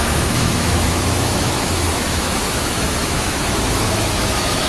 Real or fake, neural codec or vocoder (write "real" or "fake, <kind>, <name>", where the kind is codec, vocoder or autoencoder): fake, autoencoder, DAC-VAE